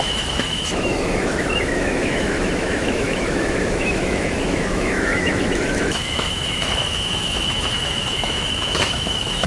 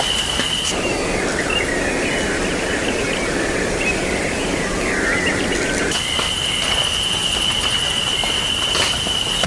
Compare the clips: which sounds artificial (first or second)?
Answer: first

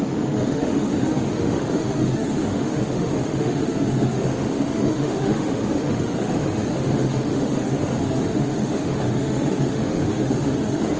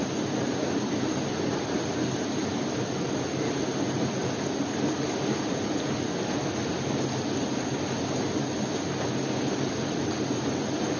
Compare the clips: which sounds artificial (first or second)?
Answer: first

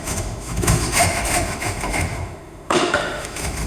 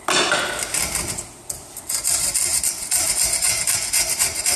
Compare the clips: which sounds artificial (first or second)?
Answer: first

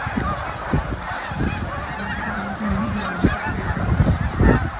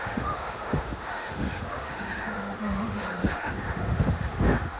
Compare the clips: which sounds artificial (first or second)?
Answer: second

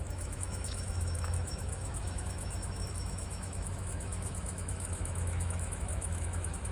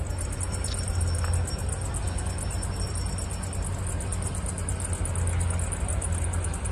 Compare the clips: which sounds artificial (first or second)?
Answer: first